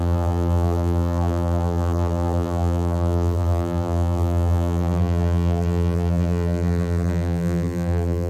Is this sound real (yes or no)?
no